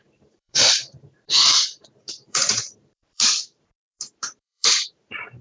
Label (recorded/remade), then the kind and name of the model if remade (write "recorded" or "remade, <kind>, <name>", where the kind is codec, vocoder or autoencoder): remade, vocoder, BigVGAN v2